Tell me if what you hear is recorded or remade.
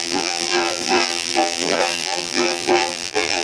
remade